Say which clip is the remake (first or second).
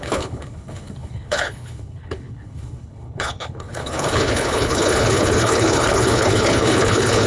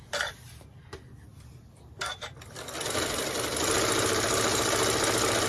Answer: first